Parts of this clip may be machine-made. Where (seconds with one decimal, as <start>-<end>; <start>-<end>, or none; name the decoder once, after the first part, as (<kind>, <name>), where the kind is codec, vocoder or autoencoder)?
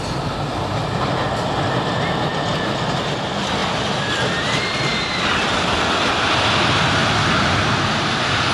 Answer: 3.6-6.3 (vocoder, BigVGAN v2)